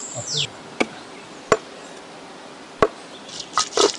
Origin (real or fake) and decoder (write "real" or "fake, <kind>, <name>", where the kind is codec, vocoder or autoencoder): real